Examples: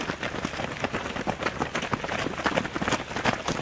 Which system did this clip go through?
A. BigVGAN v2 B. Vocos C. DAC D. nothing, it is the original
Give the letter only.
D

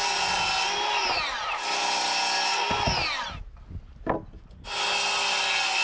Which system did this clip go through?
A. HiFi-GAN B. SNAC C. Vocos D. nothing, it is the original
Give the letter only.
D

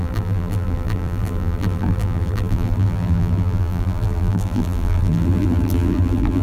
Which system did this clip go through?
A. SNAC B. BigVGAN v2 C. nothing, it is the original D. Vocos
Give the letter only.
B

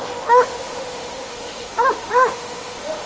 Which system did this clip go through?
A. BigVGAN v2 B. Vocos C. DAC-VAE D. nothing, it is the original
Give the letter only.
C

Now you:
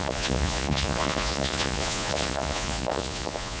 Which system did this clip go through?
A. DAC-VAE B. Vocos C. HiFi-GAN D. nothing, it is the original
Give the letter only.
B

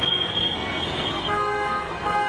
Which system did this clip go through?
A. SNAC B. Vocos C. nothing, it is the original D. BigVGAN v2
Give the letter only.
A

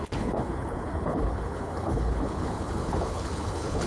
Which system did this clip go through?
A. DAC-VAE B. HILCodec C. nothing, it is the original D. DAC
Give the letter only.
B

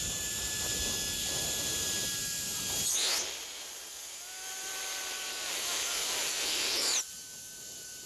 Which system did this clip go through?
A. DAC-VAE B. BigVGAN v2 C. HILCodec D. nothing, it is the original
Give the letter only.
D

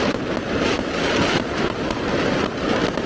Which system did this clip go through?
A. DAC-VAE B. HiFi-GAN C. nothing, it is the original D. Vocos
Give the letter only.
C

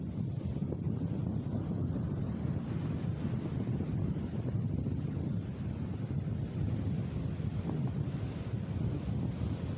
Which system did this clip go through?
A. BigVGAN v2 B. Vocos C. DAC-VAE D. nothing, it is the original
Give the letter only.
D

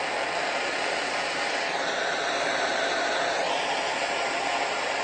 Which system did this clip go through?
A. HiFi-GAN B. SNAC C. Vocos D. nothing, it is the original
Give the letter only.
D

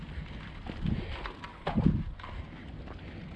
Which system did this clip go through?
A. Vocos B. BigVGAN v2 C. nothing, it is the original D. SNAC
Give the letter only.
C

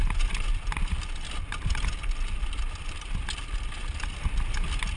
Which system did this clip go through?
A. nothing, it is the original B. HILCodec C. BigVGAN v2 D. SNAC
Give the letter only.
A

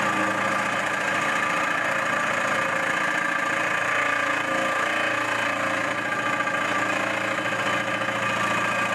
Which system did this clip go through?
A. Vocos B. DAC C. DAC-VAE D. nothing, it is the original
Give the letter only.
D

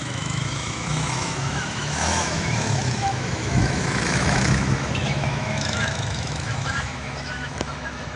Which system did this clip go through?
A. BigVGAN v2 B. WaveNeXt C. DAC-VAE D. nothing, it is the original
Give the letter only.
C